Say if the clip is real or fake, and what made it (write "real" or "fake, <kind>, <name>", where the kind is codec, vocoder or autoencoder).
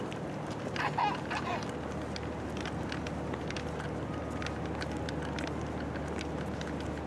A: real